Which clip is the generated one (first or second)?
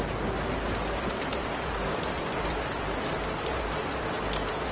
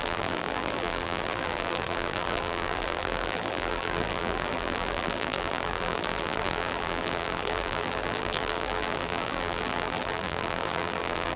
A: second